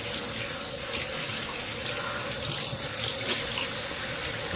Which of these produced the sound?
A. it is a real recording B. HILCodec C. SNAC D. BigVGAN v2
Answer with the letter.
A